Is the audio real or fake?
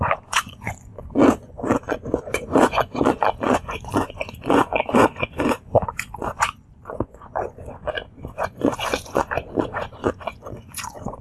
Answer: fake